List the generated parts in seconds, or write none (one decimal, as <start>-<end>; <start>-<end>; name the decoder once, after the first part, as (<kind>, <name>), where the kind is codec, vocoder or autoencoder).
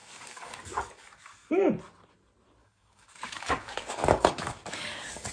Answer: 0.0-1.5 (codec, DAC); 2.6-5.3